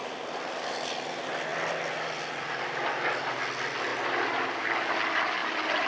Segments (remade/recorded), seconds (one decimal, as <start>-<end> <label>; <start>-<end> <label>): 0.0-5.9 recorded